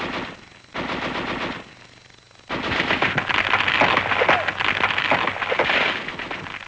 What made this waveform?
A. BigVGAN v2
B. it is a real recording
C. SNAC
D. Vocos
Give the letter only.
B